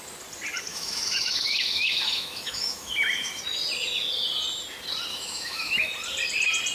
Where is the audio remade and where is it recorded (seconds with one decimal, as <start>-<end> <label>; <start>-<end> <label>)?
0.0-0.7 recorded; 0.7-3.4 remade; 3.4-5.1 recorded; 5.1-5.9 remade; 5.9-6.7 recorded